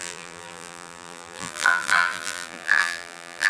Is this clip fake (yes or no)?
yes